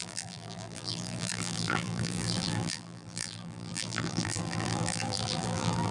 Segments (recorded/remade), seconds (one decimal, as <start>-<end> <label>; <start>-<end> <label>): 0.0-5.9 remade